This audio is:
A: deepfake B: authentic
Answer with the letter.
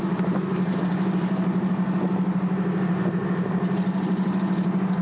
B